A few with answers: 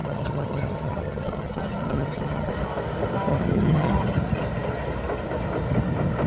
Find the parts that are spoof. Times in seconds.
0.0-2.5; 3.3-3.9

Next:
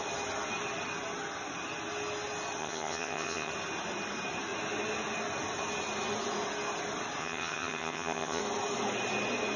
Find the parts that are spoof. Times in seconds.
2.6-3.5; 7.2-8.4

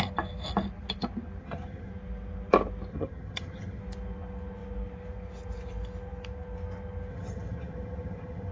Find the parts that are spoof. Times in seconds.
1.4-1.9; 2.9-3.8; 7.1-8.5

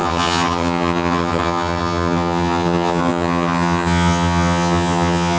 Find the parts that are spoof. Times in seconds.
0.0-5.4

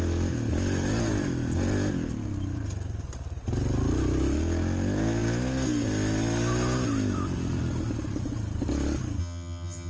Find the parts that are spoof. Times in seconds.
9.2-9.9

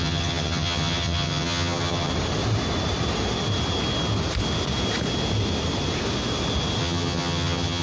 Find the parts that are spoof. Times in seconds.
0.0-2.1; 6.8-7.8

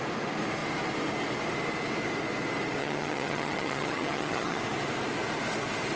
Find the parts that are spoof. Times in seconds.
2.8-4.6